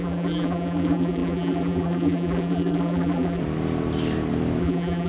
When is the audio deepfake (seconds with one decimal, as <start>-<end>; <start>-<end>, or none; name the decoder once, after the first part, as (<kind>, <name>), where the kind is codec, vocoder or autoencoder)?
0.0-3.4 (vocoder, BigVGAN v2); 4.6-5.1